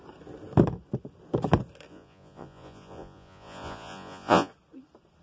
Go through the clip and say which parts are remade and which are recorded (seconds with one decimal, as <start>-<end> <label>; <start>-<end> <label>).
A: 0.0-1.9 recorded; 1.9-4.5 remade; 4.5-5.2 recorded